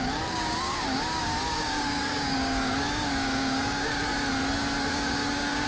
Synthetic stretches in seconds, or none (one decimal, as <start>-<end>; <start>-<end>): 0.0-4.1; 4.9-5.7